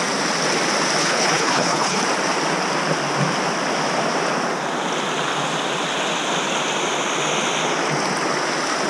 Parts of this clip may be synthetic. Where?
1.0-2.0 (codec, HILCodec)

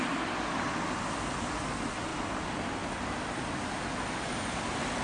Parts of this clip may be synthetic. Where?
none

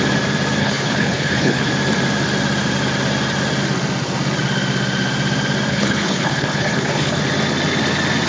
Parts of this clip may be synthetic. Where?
0.6-1.7 (codec, HILCodec); 5.7-7.2

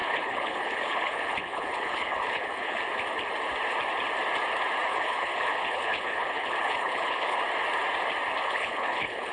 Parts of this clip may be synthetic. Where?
0.0-2.8 (codec, HILCodec); 4.9-7.4; 8.4-9.3